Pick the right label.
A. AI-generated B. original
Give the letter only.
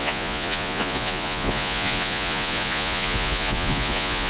A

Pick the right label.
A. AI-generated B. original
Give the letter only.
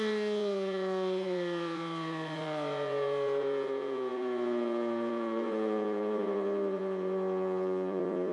A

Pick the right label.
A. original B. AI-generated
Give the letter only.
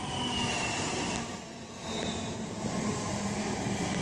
A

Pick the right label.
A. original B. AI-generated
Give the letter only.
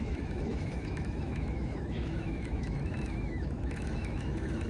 B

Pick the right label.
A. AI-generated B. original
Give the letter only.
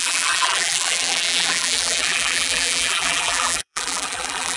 A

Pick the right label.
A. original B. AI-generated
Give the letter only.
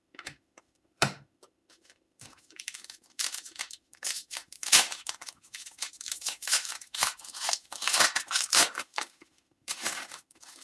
B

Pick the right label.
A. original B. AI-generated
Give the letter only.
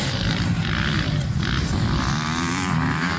A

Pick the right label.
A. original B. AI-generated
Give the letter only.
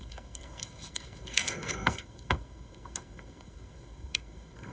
B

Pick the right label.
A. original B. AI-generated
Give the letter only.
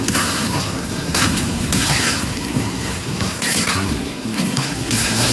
B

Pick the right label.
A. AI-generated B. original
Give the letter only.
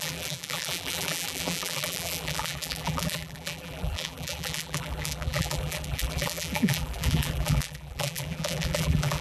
A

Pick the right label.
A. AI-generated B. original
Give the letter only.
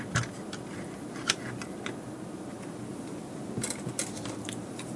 B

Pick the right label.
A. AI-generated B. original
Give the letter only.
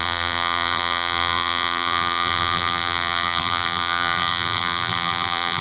A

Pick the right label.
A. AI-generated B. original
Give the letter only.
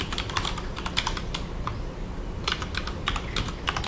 B